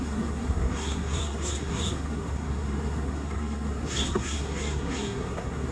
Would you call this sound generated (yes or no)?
yes